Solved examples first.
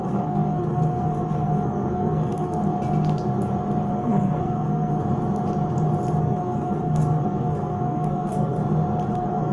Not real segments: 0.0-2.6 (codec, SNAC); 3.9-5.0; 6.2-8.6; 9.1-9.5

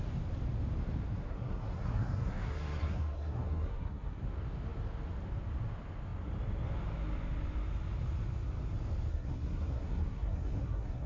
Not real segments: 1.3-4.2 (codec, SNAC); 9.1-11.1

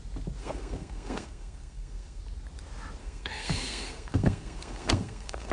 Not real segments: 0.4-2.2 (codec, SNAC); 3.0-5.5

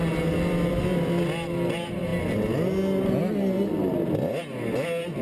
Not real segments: none